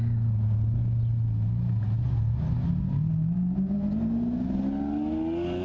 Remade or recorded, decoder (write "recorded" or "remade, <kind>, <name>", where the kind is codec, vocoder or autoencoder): recorded